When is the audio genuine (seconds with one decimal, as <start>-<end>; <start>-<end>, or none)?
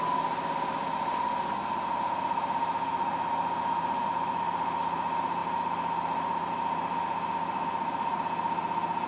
0.0-9.1